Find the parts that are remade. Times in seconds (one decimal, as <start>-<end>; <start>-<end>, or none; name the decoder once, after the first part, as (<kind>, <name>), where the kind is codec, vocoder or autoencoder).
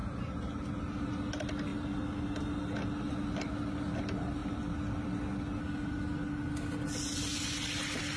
none